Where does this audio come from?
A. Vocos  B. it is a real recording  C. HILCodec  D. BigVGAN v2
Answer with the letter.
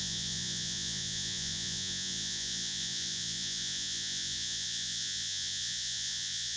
A